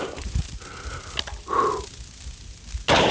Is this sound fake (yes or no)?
no